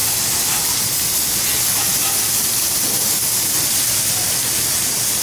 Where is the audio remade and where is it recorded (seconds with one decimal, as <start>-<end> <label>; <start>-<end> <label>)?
0.0-5.2 recorded